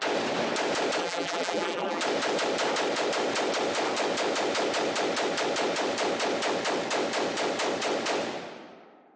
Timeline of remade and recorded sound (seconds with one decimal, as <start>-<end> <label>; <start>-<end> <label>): 0.0-1.0 recorded; 1.0-2.0 remade; 2.0-9.2 recorded